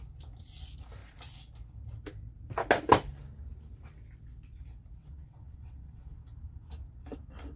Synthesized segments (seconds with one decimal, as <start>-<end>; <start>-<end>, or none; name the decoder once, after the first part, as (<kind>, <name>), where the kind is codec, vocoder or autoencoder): 5.0-6.1 (vocoder, WaveNeXt)